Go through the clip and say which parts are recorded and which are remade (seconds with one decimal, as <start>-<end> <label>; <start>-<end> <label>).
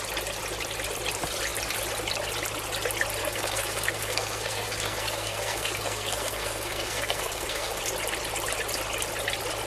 0.0-3.2 recorded; 3.2-7.8 remade; 7.8-9.7 recorded